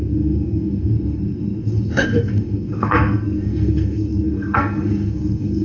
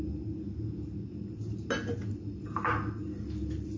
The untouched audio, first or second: second